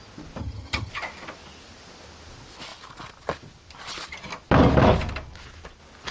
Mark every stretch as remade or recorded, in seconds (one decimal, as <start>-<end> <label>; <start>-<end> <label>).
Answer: 0.0-0.4 recorded; 0.4-0.9 remade; 0.9-6.1 recorded